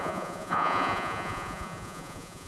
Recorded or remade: remade